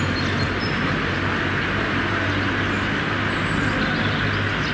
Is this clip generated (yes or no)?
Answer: no